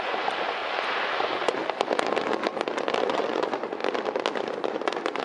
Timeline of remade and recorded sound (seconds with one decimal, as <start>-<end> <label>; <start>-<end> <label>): 0.0-0.6 remade; 0.6-1.1 recorded; 1.1-1.6 remade; 1.6-3.0 recorded; 3.0-3.8 remade; 3.8-4.7 recorded; 4.7-5.2 remade